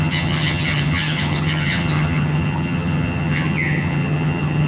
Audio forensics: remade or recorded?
remade